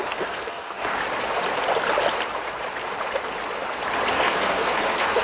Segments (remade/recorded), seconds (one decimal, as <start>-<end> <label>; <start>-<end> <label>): 0.0-1.0 remade; 1.0-4.1 recorded; 4.1-5.2 remade